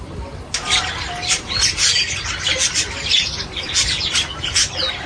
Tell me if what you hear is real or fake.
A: real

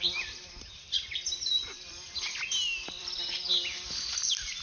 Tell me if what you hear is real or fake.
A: real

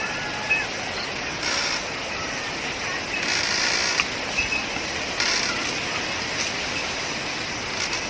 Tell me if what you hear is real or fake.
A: real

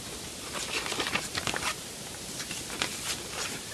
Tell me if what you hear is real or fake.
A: real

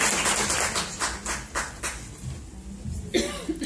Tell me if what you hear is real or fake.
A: real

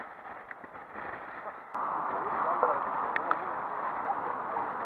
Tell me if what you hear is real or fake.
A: real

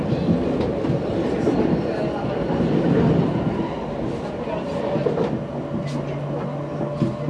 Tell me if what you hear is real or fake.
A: real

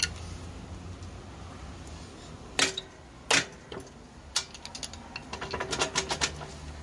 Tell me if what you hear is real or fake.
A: real